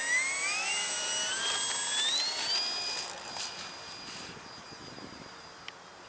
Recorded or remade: recorded